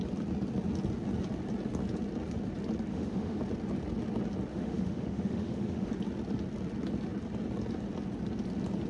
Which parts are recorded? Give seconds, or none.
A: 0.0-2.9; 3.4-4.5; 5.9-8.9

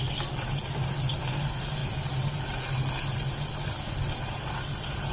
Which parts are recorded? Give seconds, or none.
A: 0.0-5.1

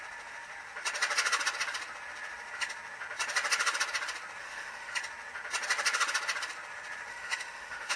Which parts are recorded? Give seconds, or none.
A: 0.0-4.4; 4.9-7.1

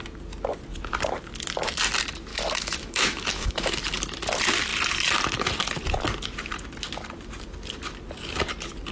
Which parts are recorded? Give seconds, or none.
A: 0.0-2.3; 3.7-8.9

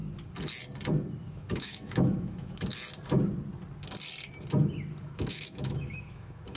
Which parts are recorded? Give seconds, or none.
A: 0.0-1.3; 2.7-5.0

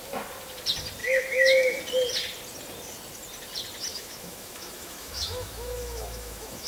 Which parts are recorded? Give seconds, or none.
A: 0.0-1.0; 1.8-3.9

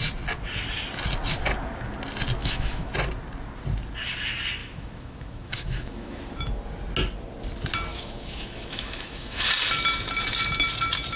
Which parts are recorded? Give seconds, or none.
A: 0.0-2.4; 2.9-4.6; 6.2-7.9; 9.5-11.2